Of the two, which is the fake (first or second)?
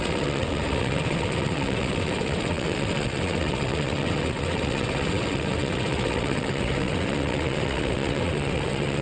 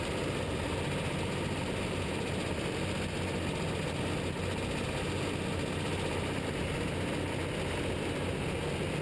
first